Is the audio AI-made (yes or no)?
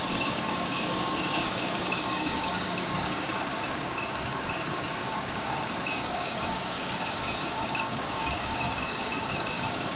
yes